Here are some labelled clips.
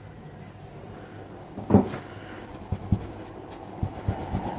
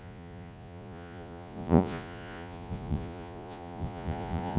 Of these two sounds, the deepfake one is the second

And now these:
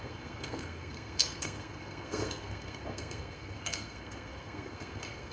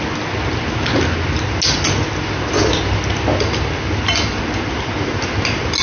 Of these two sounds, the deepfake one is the first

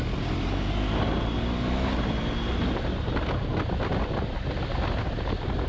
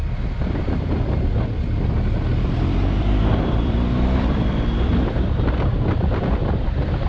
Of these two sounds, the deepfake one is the second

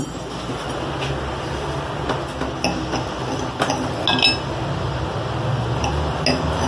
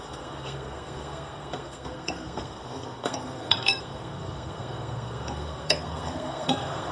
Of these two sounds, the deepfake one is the second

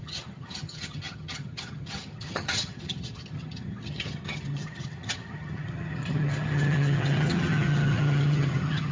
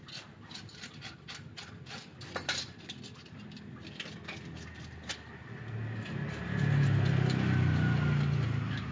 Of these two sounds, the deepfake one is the first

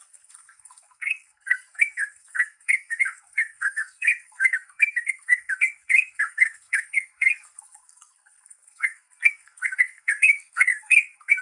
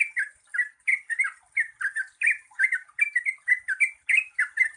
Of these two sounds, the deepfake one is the first